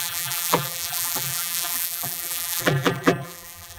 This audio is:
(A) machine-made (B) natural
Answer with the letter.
A